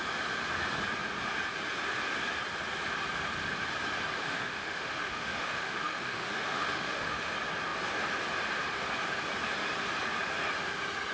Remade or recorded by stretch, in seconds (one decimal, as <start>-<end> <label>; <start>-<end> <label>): 0.0-4.2 recorded; 4.2-7.3 remade; 7.3-11.1 recorded